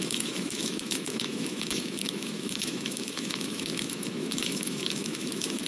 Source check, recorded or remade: remade